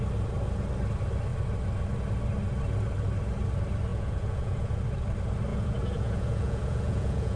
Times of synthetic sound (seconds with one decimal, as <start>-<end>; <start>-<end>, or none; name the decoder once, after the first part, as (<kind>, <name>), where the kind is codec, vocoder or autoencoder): 3.9-4.8 (vocoder, Vocos); 5.5-7.4

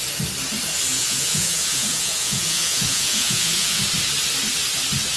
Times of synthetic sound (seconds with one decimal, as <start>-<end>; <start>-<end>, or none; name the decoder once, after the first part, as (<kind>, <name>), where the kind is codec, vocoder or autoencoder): 0.9-3.8 (vocoder, Vocos)